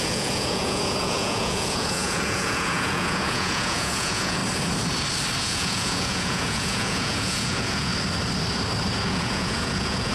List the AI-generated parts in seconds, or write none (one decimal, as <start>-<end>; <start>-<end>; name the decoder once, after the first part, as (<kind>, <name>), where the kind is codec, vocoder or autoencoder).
0.0-4.4 (vocoder, Vocos); 5.4-7.9; 9.1-10.1